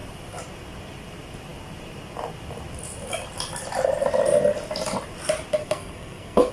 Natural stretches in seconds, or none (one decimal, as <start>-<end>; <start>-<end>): 0.0-5.6